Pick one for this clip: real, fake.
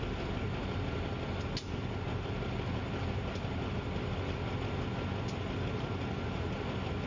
real